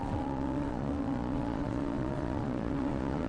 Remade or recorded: remade